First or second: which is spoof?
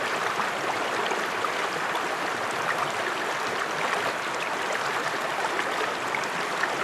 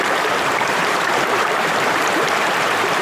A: second